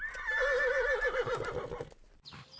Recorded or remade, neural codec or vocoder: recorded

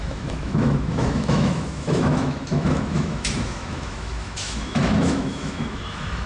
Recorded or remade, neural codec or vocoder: remade, autoencoder, DAC-VAE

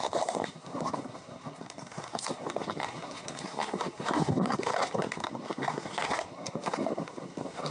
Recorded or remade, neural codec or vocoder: remade, codec, SNAC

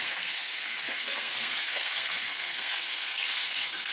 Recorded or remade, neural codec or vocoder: remade, codec, SNAC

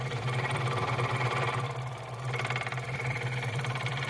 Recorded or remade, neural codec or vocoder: remade, vocoder, BigVGAN v2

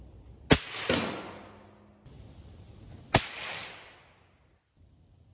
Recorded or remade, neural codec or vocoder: recorded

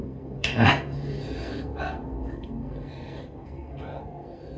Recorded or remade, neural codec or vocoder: remade, codec, SNAC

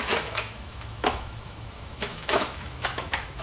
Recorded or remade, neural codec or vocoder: remade, autoencoder, DAC-VAE